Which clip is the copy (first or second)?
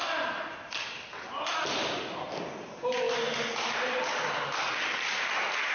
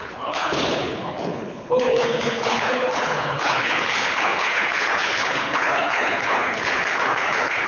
second